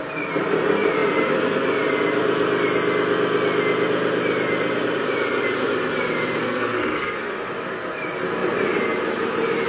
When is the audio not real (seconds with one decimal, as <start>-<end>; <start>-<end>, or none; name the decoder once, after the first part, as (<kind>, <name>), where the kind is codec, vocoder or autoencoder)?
6.4-7.5 (codec, SNAC)